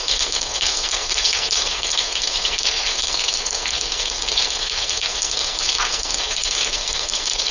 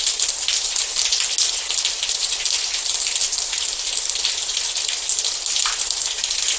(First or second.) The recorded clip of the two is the second